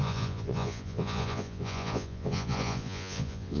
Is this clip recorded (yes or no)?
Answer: no